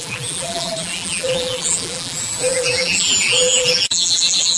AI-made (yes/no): yes